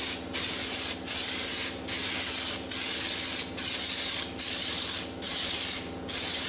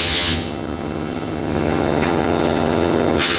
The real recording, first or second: first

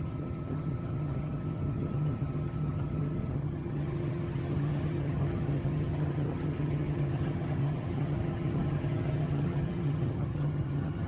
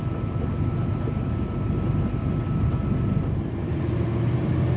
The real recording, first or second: second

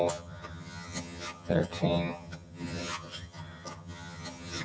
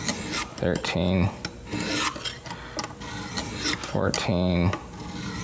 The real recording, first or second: second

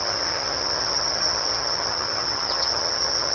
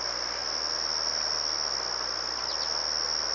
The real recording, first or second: second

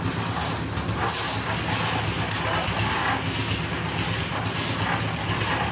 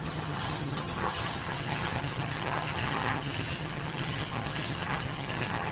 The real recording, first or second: first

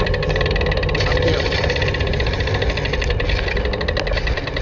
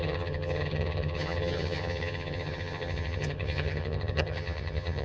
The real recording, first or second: first